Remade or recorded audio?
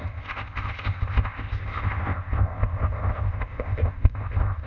remade